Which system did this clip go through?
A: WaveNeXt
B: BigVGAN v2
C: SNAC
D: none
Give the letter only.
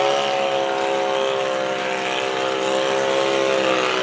D